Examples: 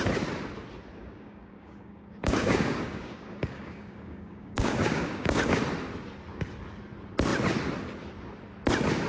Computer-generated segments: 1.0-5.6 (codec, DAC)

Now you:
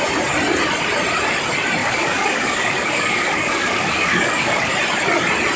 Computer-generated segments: 1.8-4.7 (codec, DAC)

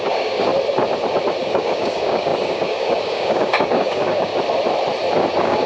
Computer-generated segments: 0.0-0.5 (codec, DAC); 1.4-4.3; 5.3-5.7

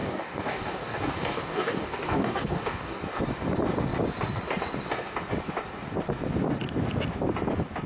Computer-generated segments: 0.0-3.0 (codec, DAC)

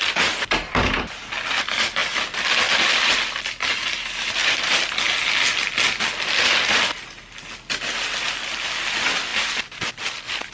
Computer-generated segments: none

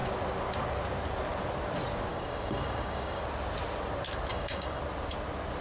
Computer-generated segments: 2.1-3.2 (codec, DAC); 4.3-4.8

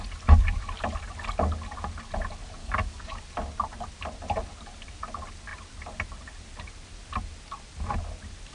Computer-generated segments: 2.6-3.2 (codec, DAC)

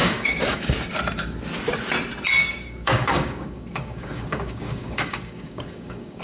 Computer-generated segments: 0.0-0.9 (codec, DAC); 2.4-6.2